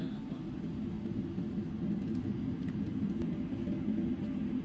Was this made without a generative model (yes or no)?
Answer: yes